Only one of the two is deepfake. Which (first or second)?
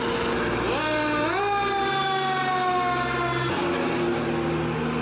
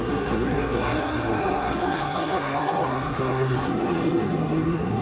second